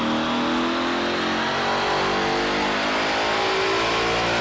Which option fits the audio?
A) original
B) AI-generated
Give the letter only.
A